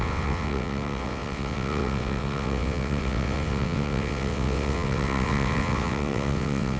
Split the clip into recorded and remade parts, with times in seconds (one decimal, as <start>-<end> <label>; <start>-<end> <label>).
0.0-6.8 remade